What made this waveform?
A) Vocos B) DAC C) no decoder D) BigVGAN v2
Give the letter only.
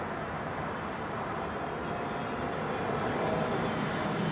C